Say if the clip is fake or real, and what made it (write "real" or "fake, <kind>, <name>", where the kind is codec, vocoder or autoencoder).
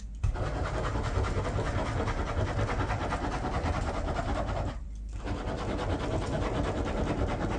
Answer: fake, vocoder, BigVGAN v2